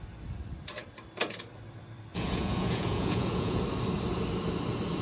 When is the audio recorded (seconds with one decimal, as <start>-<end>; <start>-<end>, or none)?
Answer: 0.0-2.1; 3.6-5.0